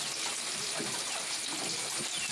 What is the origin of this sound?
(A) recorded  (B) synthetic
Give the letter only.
A